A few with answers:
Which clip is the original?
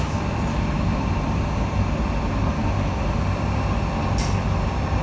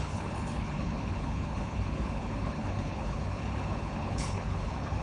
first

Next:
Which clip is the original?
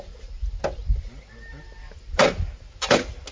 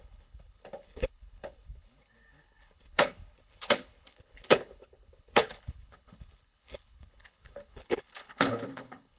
first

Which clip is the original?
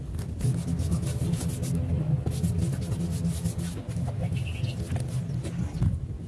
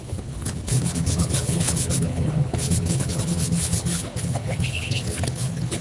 first